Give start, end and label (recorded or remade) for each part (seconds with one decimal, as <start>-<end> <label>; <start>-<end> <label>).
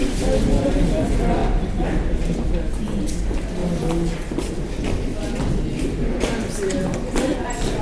0.0-3.6 remade; 3.6-4.5 recorded; 4.5-5.1 remade; 5.1-5.8 recorded; 5.8-7.3 remade; 7.3-7.8 recorded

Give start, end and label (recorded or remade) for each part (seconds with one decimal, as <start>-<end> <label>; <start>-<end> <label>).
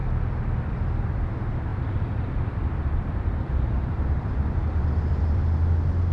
0.0-0.7 remade; 0.7-1.7 recorded; 1.7-5.4 remade; 5.4-6.1 recorded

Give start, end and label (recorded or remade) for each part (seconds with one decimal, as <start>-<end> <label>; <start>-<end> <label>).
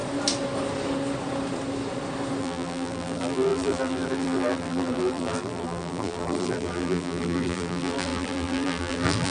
0.0-2.4 recorded; 2.4-9.3 remade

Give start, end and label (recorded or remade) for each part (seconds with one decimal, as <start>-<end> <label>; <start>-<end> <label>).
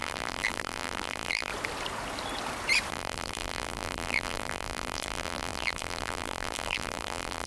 0.0-1.5 remade; 1.5-2.9 recorded; 2.9-7.5 remade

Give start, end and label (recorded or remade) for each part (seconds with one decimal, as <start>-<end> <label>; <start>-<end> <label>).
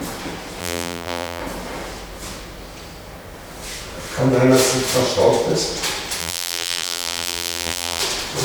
0.0-0.6 recorded; 0.6-1.4 remade; 1.4-6.2 recorded; 6.2-8.0 remade; 8.0-8.4 recorded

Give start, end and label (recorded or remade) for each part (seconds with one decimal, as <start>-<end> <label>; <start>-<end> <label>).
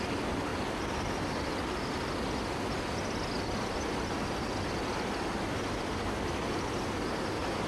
0.0-7.7 recorded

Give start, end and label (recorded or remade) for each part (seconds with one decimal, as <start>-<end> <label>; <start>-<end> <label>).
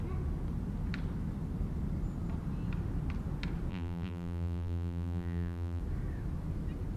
0.0-3.7 recorded; 3.7-5.8 remade; 5.8-7.0 recorded